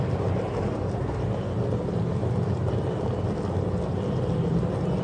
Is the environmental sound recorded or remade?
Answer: recorded